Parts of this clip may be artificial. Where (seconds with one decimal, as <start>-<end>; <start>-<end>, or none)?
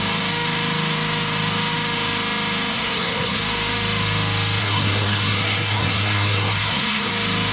2.7-3.4; 4.6-7.1